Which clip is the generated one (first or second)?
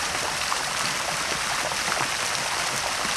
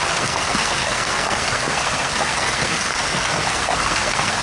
second